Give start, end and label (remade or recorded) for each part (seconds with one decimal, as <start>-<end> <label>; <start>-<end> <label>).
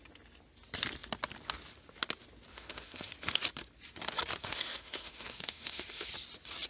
0.0-2.5 recorded; 2.5-3.1 remade; 3.1-4.4 recorded; 4.4-6.1 remade; 6.1-6.7 recorded